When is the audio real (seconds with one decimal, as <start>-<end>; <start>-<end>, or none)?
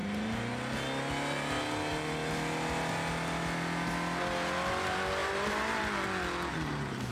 0.0-5.2; 5.8-7.1